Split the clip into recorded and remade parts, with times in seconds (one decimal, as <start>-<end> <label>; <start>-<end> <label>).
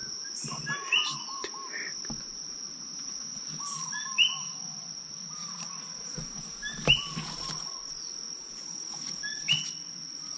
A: 0.0-10.4 recorded